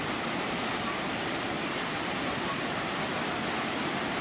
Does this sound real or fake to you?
real